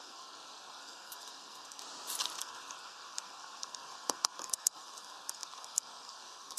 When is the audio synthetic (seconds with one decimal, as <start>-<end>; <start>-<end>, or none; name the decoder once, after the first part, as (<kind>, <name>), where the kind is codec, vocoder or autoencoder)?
0.0-1.8 (codec, SNAC); 2.4-6.6